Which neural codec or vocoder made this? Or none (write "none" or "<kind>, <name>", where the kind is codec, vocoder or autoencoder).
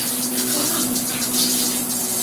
none